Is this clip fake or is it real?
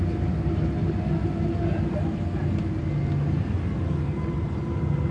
real